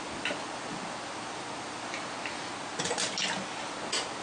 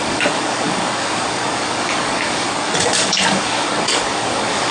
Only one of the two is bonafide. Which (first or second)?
first